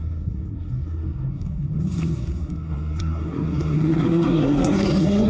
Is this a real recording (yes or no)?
no